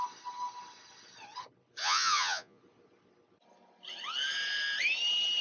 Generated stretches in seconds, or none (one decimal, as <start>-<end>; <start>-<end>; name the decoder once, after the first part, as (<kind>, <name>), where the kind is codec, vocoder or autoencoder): 1.8-2.6 (vocoder, Vocos)